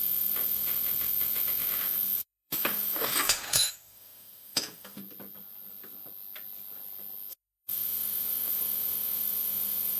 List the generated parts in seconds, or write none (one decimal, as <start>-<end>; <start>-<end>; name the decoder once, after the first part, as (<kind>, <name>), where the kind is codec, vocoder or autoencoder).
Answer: 0.0-5.0 (autoencoder, DAC-VAE); 7.3-10.0